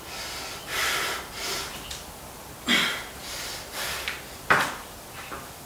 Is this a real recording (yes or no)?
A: yes